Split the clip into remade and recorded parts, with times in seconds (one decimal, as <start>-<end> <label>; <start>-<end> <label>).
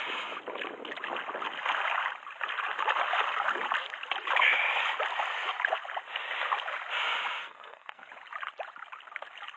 0.0-7.4 recorded; 7.4-8.1 remade; 8.1-9.6 recorded